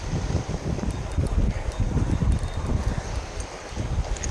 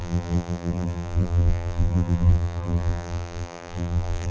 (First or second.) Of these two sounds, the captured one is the first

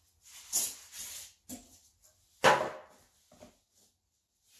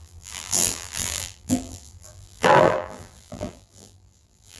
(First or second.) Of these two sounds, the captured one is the first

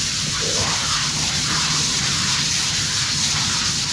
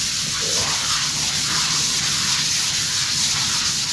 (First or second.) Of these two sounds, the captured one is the second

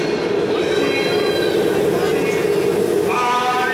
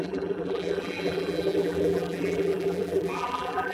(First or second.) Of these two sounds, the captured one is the first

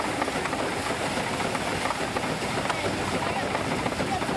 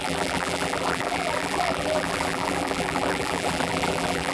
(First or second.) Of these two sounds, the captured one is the first